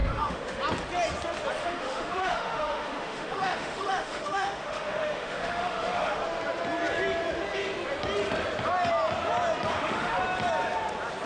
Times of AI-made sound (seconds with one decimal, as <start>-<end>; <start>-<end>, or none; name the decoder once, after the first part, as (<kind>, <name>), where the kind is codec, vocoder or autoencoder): 0.0-0.6 (autoencoder, DAC-VAE); 1.6-6.2; 9.7-10.2